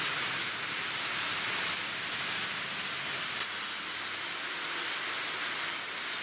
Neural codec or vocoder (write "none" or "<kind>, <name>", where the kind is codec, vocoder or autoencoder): none